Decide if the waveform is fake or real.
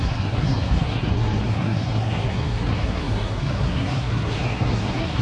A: fake